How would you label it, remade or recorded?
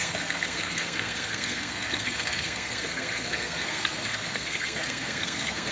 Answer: remade